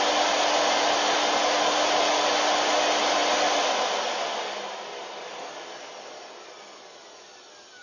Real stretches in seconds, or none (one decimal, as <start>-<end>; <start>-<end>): 0.0-7.8